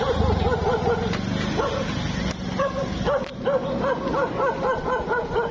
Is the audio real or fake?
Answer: real